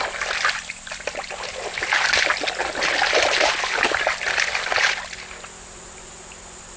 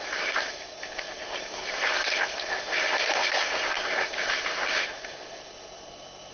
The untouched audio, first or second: first